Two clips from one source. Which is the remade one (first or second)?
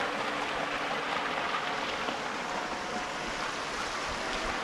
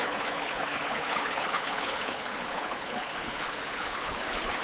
second